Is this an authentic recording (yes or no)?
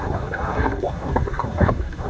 no